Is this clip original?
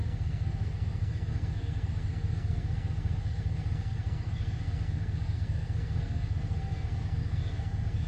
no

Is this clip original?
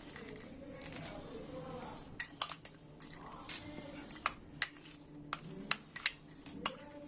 yes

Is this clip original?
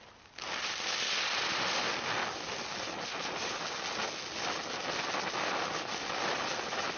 yes